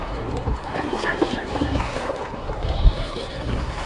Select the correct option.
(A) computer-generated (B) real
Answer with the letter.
A